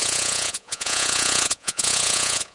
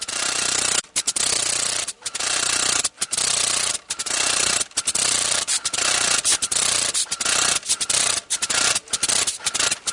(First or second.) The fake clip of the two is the first